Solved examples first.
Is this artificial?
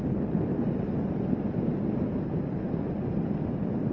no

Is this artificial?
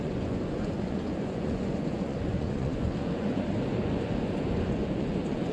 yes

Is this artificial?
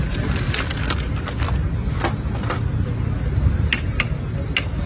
no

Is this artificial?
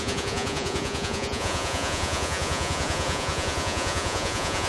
yes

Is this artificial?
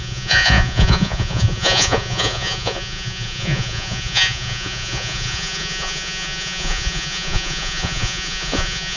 yes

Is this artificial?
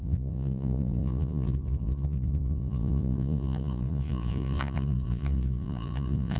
yes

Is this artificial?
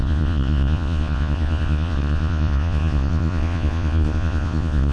yes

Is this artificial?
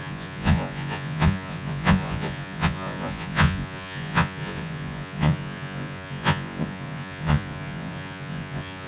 yes